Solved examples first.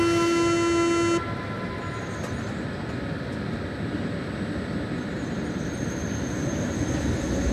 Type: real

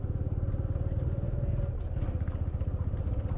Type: real